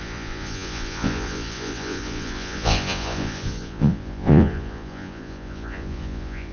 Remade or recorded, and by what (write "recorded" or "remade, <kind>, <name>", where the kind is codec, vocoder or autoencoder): remade, vocoder, Vocos